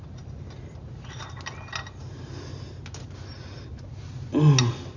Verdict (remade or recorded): recorded